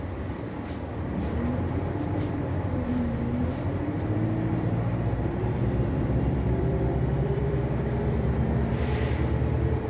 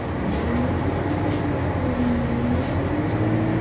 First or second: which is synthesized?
first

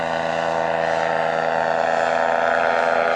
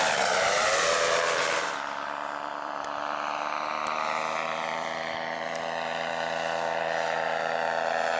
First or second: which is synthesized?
second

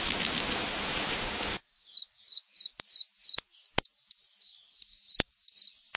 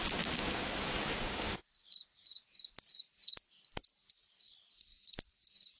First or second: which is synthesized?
second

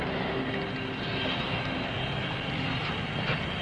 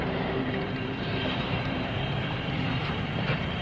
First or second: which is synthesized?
second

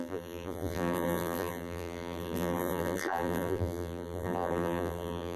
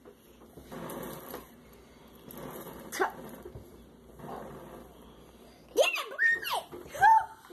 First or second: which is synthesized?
first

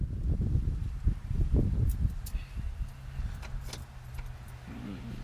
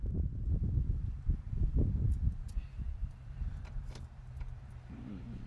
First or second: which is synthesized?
second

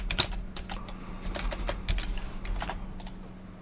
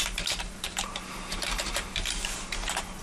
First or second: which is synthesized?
second